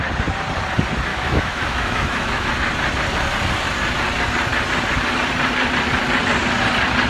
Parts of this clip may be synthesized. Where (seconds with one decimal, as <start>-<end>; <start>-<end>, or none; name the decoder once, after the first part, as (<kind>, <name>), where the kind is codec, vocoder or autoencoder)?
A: 1.1-2.5 (autoencoder, DAC-VAE)